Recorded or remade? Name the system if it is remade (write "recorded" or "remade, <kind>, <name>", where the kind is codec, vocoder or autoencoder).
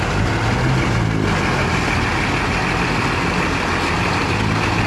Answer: recorded